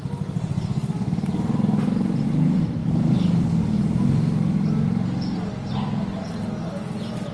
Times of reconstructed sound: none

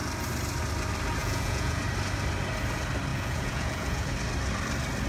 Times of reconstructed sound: 1.2-1.8 (vocoder, Vocos); 3.1-4.1